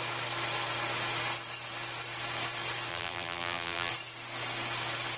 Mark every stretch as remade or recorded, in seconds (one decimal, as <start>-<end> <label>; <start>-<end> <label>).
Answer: 0.0-2.9 recorded; 2.9-3.9 remade; 3.9-5.2 recorded